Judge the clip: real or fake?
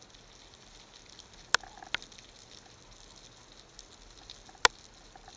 real